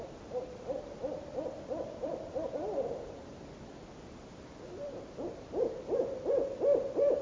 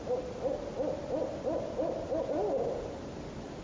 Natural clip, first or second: second